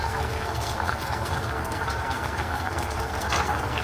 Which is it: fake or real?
fake